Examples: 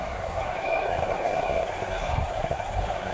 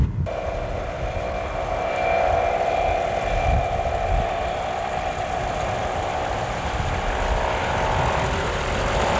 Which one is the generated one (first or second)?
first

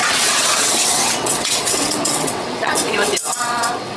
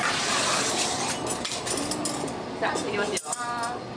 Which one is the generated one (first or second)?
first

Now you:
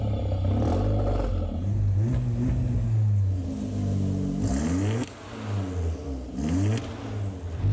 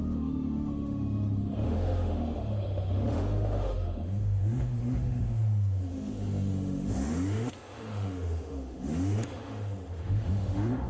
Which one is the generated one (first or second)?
second